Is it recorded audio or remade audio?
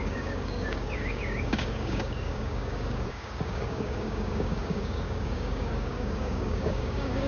remade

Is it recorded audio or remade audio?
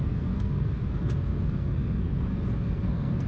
remade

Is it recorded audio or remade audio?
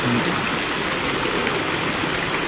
recorded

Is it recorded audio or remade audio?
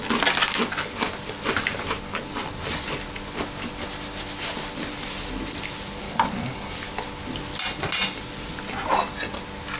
recorded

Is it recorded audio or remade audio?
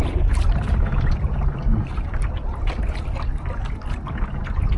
recorded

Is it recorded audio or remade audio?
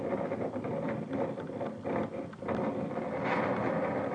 recorded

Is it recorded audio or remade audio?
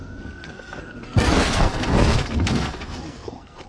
remade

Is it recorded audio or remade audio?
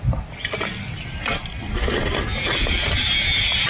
recorded